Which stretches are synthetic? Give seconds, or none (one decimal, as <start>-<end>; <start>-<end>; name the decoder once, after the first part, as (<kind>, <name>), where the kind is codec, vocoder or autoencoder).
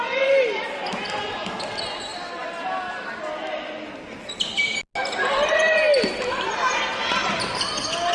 none